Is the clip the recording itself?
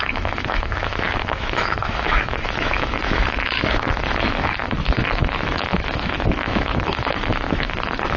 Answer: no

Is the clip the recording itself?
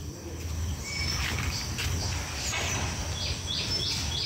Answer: yes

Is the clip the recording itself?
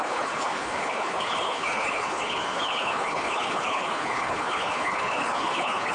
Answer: no